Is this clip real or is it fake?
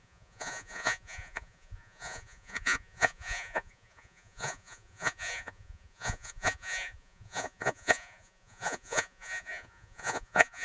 fake